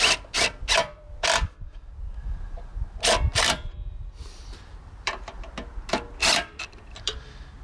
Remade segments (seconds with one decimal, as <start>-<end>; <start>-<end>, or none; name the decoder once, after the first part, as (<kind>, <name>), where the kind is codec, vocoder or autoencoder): 0.0-2.7 (vocoder, BigVGAN v2); 3.3-7.6